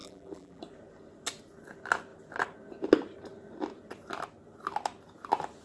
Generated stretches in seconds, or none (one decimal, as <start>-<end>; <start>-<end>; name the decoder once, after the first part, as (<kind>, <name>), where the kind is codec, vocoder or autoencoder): 0.0-0.6 (vocoder, BigVGAN v2)